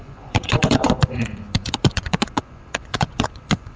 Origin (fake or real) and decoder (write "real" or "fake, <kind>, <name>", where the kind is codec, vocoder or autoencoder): fake, vocoder, Vocos